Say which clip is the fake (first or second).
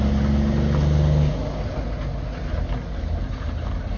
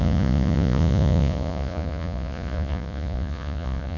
second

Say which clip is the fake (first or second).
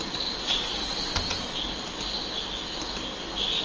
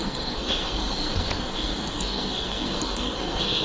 second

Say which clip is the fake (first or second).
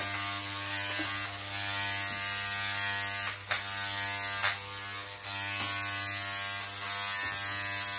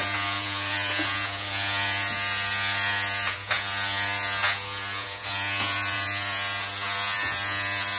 second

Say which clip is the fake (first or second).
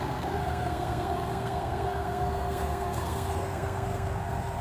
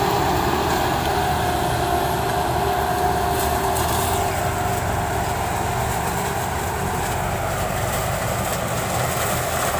first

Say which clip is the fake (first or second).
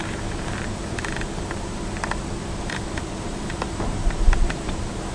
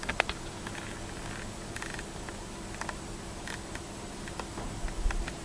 first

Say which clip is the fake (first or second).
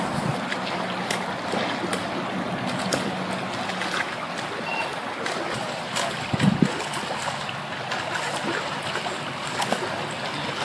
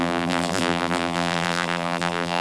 second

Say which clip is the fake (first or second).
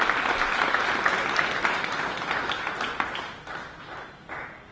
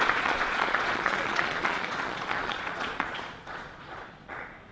second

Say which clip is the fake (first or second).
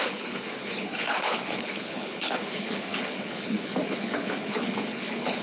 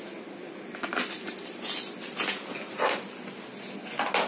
first